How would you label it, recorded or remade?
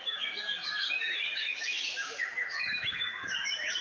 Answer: remade